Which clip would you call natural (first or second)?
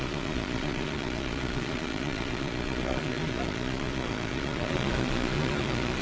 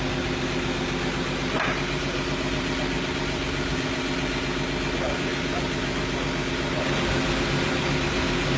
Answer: second